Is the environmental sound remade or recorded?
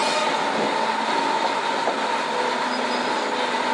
recorded